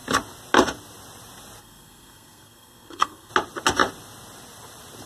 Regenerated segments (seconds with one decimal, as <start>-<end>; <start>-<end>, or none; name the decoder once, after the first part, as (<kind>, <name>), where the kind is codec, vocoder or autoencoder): 1.6-3.3 (codec, SNAC)